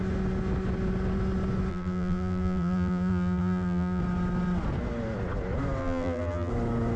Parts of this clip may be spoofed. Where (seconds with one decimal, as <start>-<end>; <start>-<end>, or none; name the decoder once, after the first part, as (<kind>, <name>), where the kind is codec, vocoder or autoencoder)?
1.7-4.0 (vocoder, BigVGAN v2); 5.8-6.5